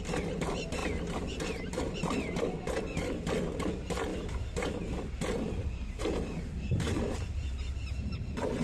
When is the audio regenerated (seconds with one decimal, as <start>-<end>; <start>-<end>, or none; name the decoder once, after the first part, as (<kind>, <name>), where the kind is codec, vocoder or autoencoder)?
none